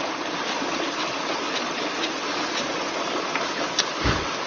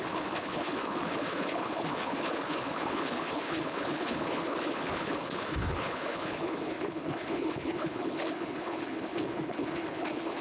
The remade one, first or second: second